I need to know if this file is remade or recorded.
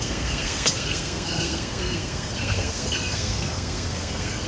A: remade